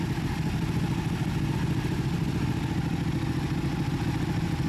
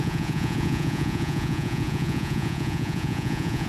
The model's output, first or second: second